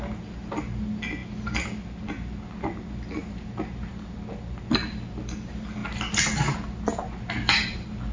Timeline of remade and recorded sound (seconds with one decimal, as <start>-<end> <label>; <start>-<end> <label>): 0.0-8.1 recorded